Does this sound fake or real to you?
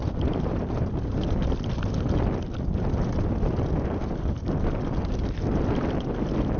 real